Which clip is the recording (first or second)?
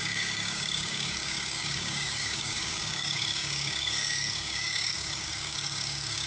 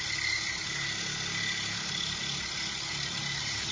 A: second